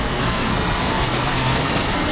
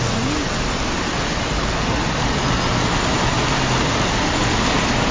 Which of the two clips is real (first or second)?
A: second